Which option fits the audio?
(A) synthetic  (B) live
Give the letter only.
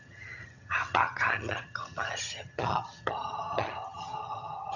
A